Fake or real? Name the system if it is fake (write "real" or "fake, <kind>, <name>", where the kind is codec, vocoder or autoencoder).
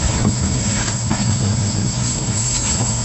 fake, codec, SNAC